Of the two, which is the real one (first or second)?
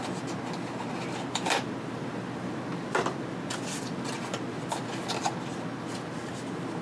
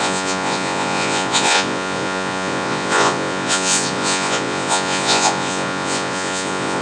first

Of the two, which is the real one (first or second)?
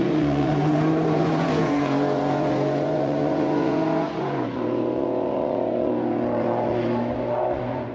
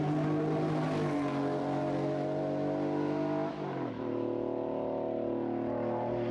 second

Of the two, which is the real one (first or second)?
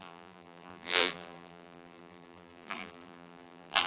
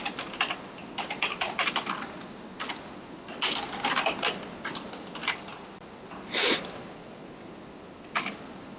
second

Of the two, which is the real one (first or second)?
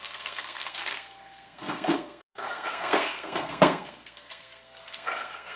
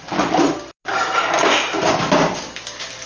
second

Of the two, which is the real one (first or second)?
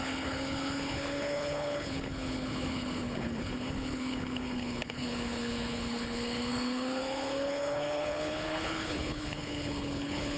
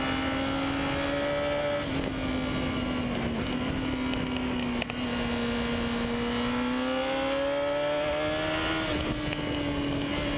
second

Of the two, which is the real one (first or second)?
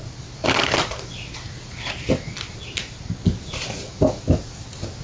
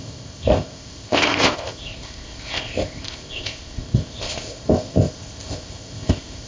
first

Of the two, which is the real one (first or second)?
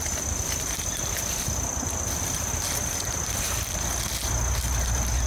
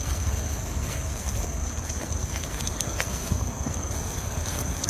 first